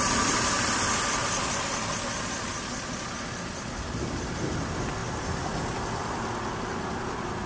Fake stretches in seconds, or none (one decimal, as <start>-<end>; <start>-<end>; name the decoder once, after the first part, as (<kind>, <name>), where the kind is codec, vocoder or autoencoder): none